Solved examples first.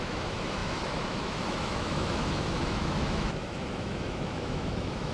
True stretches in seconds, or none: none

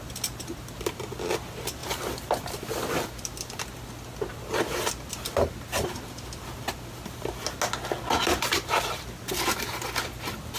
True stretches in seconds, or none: 0.0-10.6

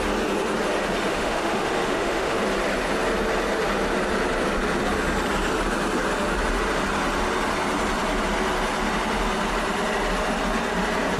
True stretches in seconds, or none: 0.0-1.1; 2.4-11.2

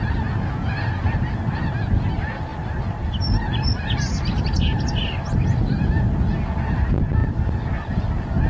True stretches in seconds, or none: 0.0-8.5

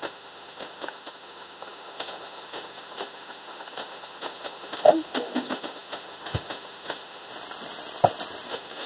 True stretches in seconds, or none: 7.3-8.5

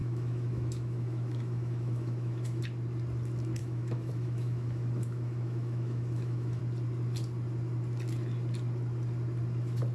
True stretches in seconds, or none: 2.6-3.6; 6.6-9.9

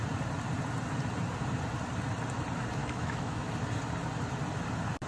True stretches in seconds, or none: 0.0-2.8; 3.5-5.1

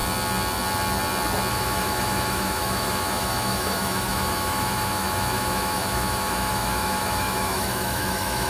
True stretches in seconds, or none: 0.0-1.5